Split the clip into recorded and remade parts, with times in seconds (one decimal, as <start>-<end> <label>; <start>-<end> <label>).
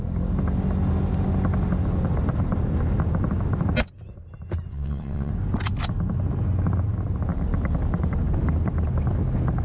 0.0-4.7 recorded; 4.7-5.3 remade; 5.3-9.6 recorded